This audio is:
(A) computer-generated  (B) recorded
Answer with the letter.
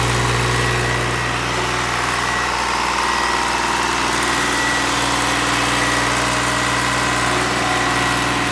B